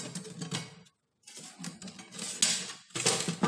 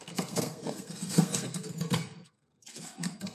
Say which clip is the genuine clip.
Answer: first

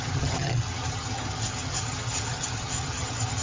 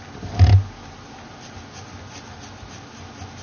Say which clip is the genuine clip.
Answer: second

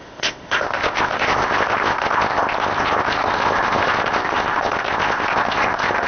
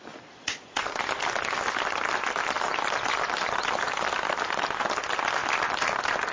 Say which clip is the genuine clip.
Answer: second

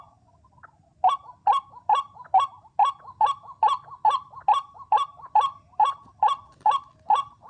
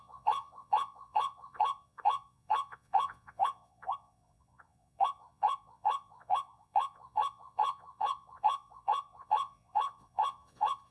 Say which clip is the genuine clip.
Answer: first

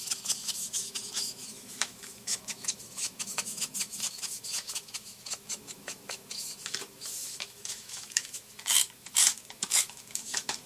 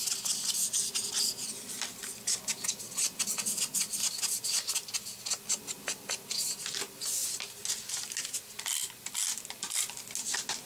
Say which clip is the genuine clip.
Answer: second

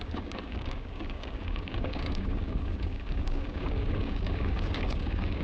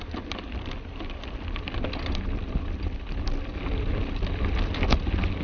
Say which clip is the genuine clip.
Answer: second